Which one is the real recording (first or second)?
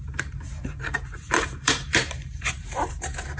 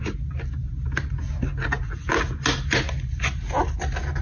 second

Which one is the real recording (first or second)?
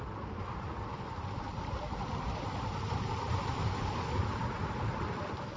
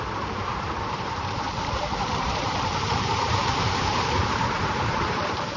first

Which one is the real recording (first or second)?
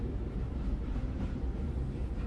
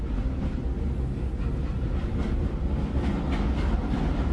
second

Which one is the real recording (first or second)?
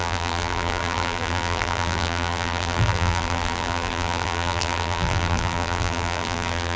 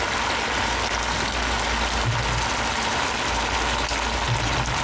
second